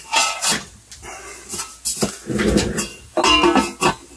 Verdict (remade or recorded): recorded